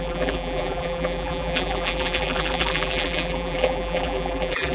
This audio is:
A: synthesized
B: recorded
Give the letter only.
A